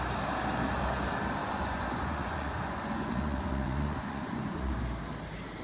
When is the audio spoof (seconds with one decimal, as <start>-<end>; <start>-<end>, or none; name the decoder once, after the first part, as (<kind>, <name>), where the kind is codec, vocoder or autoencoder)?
1.4-4.8 (vocoder, Vocos)